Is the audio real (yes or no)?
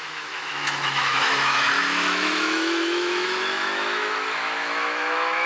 no